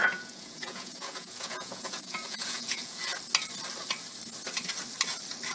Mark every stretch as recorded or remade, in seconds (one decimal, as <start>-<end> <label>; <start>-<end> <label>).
0.0-3.1 remade; 3.1-5.5 recorded